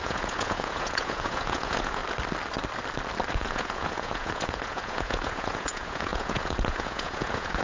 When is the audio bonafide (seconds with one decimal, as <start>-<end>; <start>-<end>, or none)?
2.0-3.3